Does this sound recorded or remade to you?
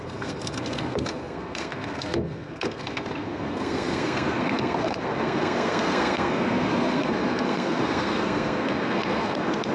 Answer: remade